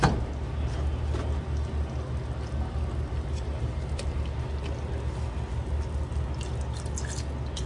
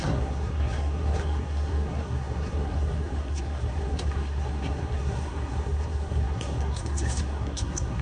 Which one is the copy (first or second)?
second